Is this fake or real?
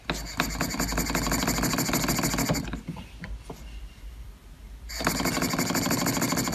real